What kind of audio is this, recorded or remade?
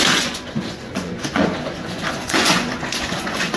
remade